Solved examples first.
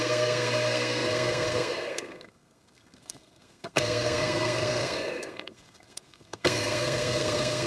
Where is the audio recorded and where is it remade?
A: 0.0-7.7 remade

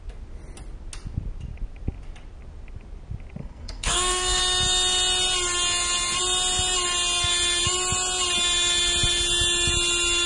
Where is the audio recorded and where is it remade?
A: 0.0-3.4 recorded; 3.4-4.4 remade; 4.4-10.3 recorded

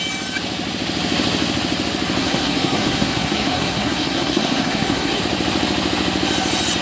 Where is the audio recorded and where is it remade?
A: 0.0-2.2 recorded; 2.2-5.2 remade; 5.2-6.8 recorded

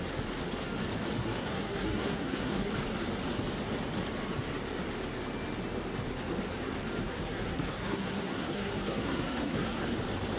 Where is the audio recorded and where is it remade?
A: 0.0-1.2 recorded; 1.2-2.7 remade; 2.7-7.0 recorded; 7.0-9.8 remade; 9.8-10.4 recorded

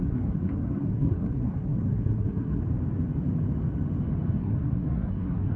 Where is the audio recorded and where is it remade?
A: 0.0-2.6 remade; 2.6-4.4 recorded; 4.4-5.6 remade

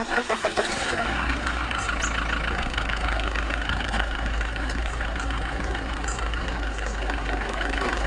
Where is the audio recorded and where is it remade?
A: 0.0-1.9 remade; 1.9-2.5 recorded; 2.5-8.1 remade

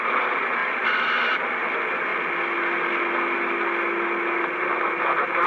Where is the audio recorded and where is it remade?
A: 0.0-5.5 recorded

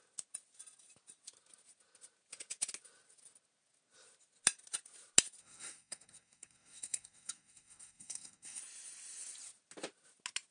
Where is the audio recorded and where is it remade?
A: 0.0-5.4 recorded; 5.4-8.6 remade; 8.6-10.5 recorded